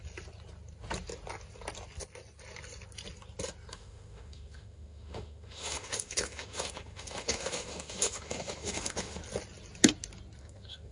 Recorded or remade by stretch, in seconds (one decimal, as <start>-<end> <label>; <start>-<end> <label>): 0.0-3.7 recorded; 3.7-9.2 remade; 9.2-10.4 recorded; 10.4-10.9 remade